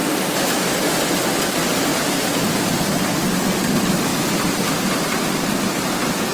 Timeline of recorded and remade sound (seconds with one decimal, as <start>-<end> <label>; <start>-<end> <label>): 0.0-1.4 recorded; 1.4-6.3 remade